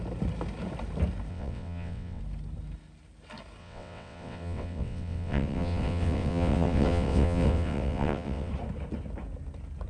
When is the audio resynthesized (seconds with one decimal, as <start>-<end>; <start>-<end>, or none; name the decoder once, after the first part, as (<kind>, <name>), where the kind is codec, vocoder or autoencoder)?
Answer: 1.3-2.2 (vocoder, WaveNeXt); 3.6-8.5